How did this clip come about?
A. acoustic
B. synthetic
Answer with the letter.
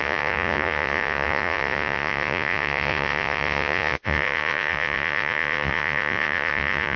B